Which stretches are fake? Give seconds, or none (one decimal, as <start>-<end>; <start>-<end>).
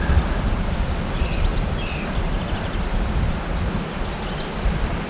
0.0-1.5; 4.6-5.1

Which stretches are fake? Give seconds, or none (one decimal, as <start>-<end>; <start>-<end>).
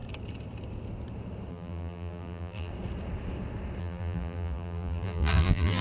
1.5-2.7; 3.8-5.8